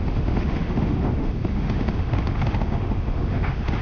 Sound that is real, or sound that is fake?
fake